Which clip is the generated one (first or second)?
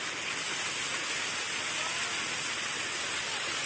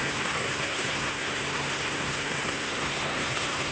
second